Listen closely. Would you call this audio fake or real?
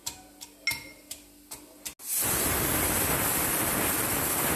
real